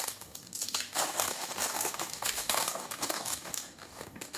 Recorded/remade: remade